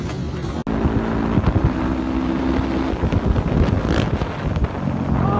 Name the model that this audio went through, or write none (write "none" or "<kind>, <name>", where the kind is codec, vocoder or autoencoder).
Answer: none